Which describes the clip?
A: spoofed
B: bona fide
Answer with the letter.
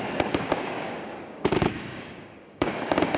A